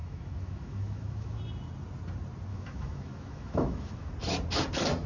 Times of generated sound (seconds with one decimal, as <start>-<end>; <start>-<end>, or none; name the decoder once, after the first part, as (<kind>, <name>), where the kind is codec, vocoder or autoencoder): 0.0-1.4 (autoencoder, DAC-VAE); 2.5-4.1